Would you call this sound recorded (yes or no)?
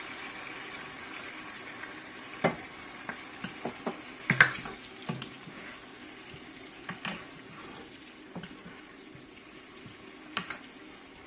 yes